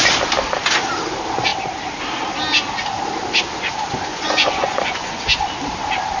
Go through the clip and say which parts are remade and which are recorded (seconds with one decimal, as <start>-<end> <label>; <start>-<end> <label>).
0.0-4.1 recorded; 4.1-5.2 remade; 5.2-6.2 recorded